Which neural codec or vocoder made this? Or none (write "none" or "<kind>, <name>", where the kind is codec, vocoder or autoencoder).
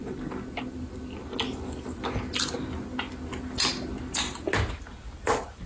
none